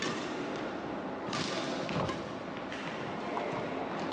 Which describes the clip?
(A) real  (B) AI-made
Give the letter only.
A